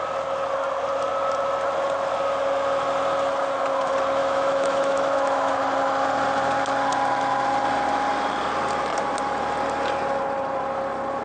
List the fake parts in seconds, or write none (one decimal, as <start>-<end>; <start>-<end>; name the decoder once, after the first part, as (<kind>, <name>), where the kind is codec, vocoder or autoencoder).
4.2-5.6 (autoencoder, DAC-VAE)